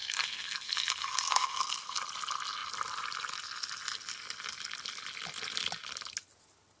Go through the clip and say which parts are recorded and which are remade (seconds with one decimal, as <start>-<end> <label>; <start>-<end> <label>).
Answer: 0.0-2.0 remade; 2.0-6.8 recorded